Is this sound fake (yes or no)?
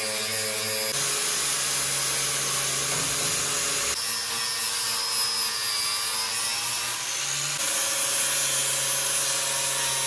no